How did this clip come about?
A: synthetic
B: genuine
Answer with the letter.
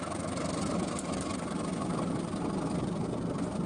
B